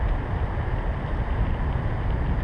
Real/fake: real